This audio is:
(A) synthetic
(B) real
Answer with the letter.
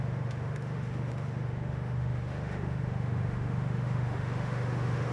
A